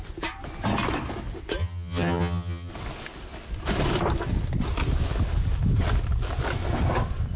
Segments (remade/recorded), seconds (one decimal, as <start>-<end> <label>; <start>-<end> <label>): 0.0-1.6 recorded; 1.6-2.7 remade; 2.7-7.4 recorded